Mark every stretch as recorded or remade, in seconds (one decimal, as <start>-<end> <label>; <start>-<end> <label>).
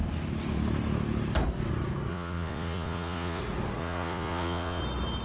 0.0-2.1 recorded; 2.1-3.4 remade; 3.4-3.8 recorded; 3.8-4.8 remade; 4.8-5.2 recorded